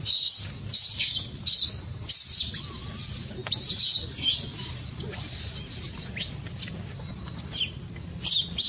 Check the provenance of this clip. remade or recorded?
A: recorded